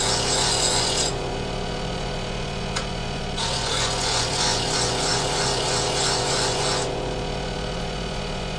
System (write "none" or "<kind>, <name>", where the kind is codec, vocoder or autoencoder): vocoder, Vocos